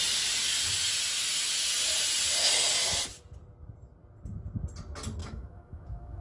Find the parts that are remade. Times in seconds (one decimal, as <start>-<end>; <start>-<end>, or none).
5.2-6.2